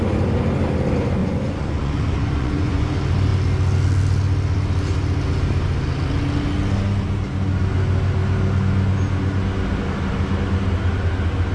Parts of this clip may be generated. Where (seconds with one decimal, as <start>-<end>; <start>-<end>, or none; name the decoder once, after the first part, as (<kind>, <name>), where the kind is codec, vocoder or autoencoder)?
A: 1.2-2.9 (vocoder, Vocos)